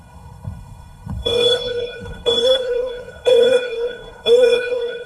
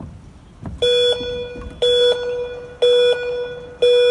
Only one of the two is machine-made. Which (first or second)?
first